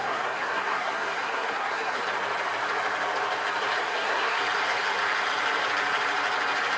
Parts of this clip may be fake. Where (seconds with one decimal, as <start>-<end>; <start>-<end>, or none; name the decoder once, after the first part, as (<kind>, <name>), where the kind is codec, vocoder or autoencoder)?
0.0-2.0 (codec, SNAC); 3.8-4.4